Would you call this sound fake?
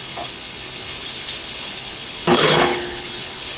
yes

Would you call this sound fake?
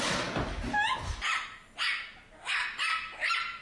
no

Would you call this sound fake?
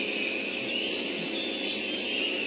no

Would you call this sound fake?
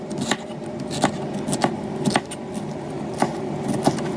no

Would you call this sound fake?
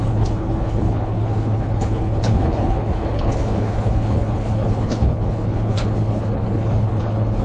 yes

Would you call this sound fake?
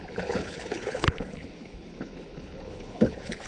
yes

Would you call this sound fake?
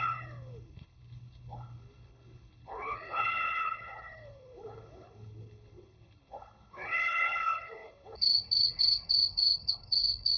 yes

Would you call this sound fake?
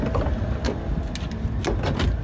no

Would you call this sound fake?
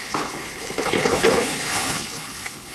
yes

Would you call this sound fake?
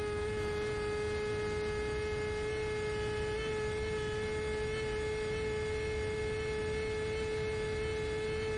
no